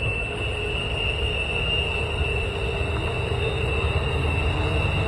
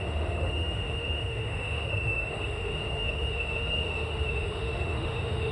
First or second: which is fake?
second